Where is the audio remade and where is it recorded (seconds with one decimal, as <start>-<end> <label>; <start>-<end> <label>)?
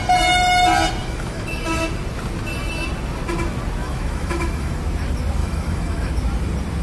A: 0.0-1.0 recorded; 1.0-1.6 remade; 1.6-3.8 recorded; 3.8-4.8 remade; 4.8-5.4 recorded; 5.4-6.1 remade; 6.1-6.8 recorded